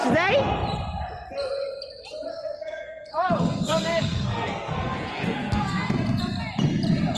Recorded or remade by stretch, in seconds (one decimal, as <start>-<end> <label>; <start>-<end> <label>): 0.0-2.3 recorded; 2.3-5.9 remade; 5.9-7.2 recorded